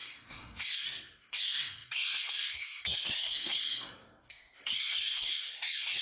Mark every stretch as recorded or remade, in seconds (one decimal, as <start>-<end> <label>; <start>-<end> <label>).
0.0-6.0 remade